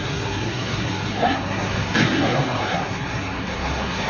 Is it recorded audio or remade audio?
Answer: remade